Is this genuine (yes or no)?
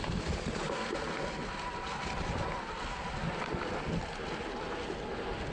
yes